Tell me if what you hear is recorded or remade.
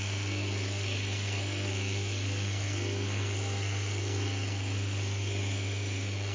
remade